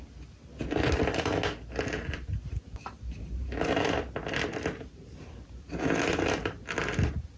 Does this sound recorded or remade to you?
recorded